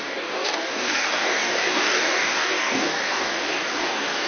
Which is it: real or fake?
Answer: fake